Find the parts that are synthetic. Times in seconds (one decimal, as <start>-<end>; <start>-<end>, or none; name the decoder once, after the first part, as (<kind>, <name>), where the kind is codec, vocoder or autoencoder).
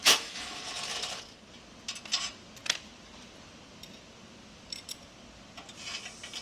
0.0-0.6 (autoencoder, DAC-VAE)